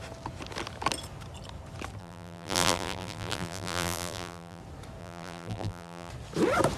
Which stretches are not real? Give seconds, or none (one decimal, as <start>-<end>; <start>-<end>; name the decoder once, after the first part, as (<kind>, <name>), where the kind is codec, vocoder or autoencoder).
2.0-4.6 (vocoder, BigVGAN v2); 5.0-6.1